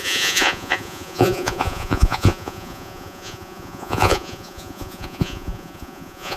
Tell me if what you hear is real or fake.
fake